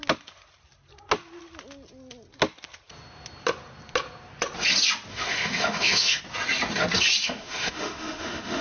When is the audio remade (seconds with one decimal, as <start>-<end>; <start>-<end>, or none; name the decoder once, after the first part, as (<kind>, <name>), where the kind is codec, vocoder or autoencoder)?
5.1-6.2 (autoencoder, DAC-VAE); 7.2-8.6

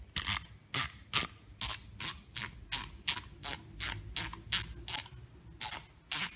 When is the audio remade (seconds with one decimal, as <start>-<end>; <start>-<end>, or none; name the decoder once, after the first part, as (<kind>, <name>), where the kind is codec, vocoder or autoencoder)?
none

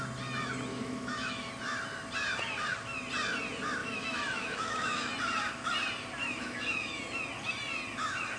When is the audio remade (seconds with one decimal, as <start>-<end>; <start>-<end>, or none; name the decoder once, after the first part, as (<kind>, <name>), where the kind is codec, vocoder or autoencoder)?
0.7-1.5 (autoencoder, DAC-VAE); 3.8-5.1; 6.2-7.0